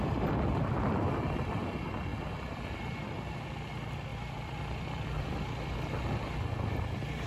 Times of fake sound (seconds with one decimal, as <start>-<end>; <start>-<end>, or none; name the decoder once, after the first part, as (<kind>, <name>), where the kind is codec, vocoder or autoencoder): 2.1-2.8 (vocoder, BigVGAN v2); 4.1-5.2